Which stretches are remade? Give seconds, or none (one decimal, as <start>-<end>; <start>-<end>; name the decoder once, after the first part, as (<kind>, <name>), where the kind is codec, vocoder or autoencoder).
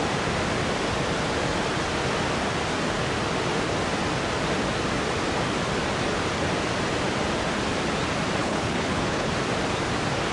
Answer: 8.4-9.3 (codec, HILCodec)